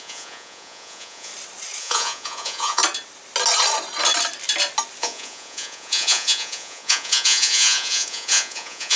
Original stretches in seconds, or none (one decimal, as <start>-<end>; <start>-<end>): 1.3-1.8; 2.8-5.0